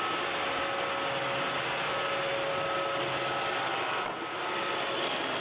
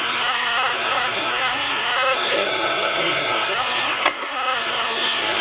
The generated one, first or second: second